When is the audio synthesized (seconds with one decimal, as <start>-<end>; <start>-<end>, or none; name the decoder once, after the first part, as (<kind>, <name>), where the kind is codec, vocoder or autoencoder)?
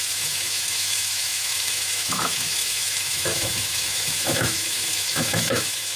0.0-6.0 (autoencoder, DAC-VAE)